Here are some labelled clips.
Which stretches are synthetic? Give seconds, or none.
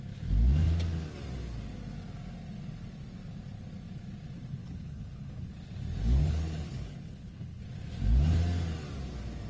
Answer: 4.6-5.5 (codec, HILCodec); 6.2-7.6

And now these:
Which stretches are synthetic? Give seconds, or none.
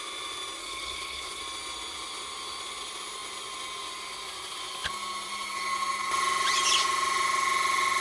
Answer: 0.6-1.4 (codec, HILCodec)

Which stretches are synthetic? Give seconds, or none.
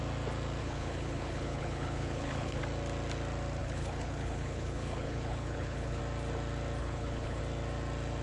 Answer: 0.6-2.6 (codec, HILCodec); 3.6-6.0; 6.8-7.4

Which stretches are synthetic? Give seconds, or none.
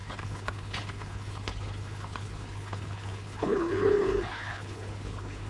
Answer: 0.0-5.5 (codec, HILCodec)